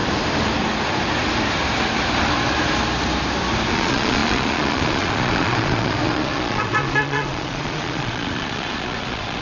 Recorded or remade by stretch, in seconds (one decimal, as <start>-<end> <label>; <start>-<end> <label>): 0.0-3.7 recorded; 3.7-9.4 remade